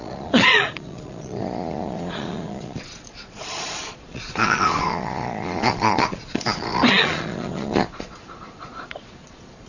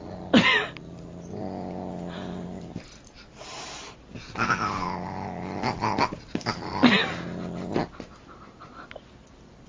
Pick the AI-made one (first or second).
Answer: first